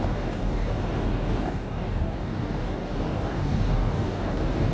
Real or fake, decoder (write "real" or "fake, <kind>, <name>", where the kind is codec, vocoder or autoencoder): fake, codec, DAC